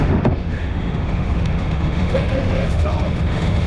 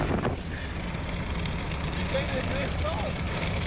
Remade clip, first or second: first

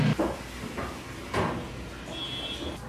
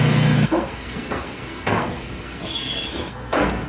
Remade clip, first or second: second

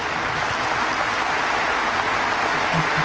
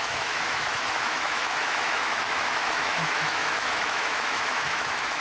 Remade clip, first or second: second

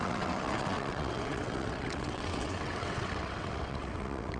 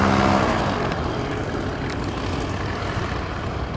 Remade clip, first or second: first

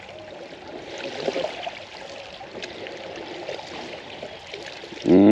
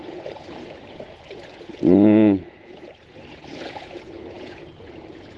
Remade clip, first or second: second